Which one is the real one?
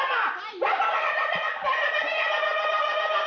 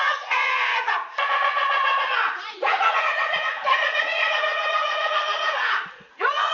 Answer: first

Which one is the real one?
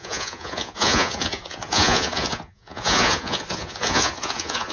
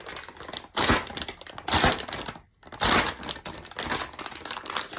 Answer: second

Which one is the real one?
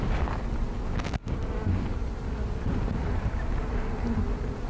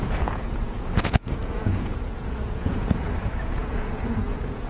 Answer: first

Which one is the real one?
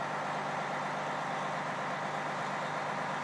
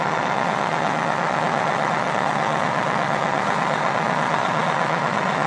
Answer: first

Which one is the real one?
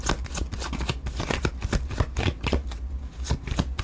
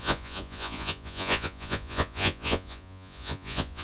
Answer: first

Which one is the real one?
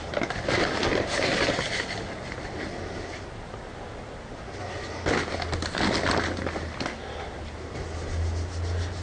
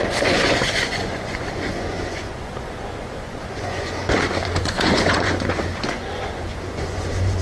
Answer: first